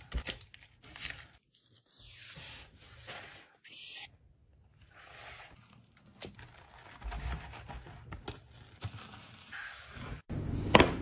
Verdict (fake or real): real